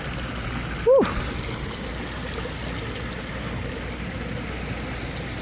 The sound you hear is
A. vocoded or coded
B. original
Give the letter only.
B